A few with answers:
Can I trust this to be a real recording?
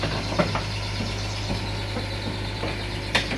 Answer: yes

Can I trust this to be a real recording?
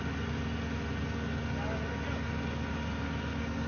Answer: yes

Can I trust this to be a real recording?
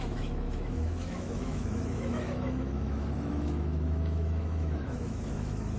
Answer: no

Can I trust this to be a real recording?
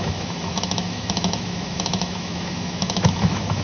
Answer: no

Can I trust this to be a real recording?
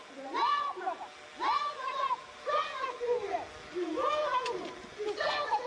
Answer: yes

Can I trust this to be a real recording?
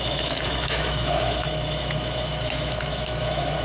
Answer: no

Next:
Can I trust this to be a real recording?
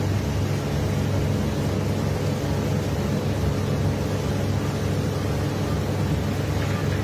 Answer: yes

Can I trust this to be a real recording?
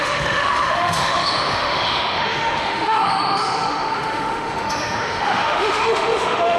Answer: no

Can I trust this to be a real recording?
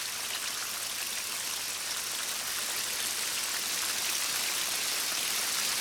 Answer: yes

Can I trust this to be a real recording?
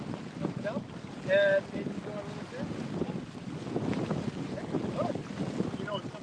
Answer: yes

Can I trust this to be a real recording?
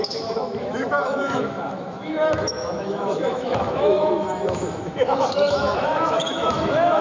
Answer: no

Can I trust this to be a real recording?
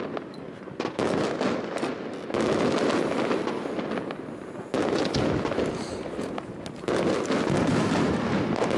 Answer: yes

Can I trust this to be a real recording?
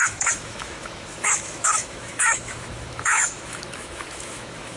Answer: no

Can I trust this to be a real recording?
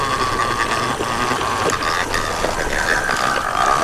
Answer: yes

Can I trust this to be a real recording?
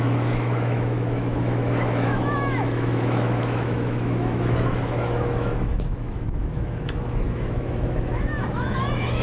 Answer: no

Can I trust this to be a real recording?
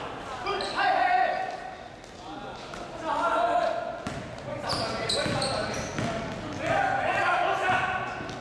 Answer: yes